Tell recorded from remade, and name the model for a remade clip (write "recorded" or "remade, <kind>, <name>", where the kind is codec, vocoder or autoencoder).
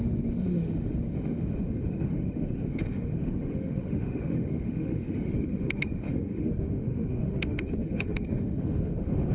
remade, autoencoder, DAC-VAE